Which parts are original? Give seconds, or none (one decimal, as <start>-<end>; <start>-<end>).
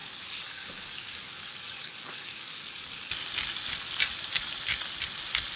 3.0-5.6